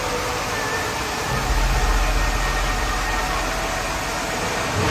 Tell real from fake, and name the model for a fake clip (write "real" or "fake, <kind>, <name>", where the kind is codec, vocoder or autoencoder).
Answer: real